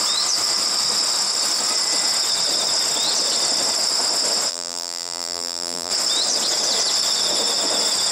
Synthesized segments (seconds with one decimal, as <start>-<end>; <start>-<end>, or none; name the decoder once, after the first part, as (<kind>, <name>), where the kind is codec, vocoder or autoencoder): 4.5-5.9 (vocoder, BigVGAN v2)